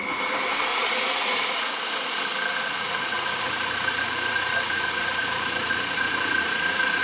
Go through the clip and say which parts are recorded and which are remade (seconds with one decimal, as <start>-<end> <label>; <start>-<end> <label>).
0.0-0.7 recorded; 0.7-2.1 remade; 2.1-2.5 recorded; 2.5-7.0 remade